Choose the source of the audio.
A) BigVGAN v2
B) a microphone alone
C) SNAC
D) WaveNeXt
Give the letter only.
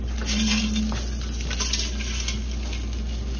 B